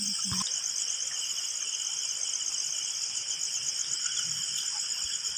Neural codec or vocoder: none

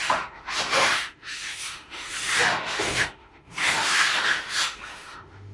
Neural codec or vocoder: autoencoder, DAC-VAE